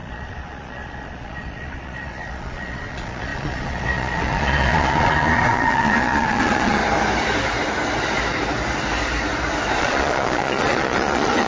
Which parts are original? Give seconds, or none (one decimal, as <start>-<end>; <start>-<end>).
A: 6.8-9.8